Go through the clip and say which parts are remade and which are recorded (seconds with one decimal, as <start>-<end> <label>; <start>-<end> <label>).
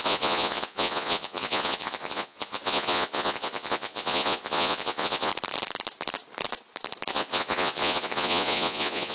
0.0-5.3 remade; 5.3-7.1 recorded; 7.1-9.1 remade